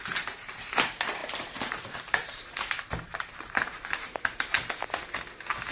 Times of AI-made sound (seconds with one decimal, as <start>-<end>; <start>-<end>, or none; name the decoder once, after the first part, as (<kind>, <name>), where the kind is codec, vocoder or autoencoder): 0.0-4.6 (vocoder, BigVGAN v2)